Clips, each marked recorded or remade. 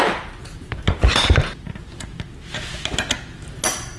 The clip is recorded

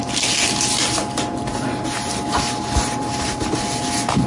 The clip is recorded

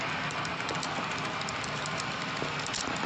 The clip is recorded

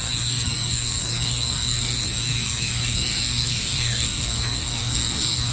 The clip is remade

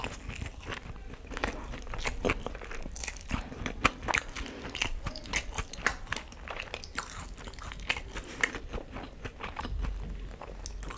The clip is recorded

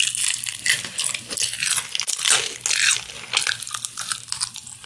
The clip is recorded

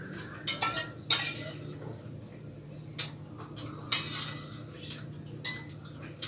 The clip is recorded